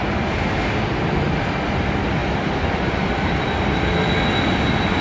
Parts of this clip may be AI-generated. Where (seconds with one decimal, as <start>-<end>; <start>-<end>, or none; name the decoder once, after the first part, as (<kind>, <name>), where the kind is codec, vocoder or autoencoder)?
none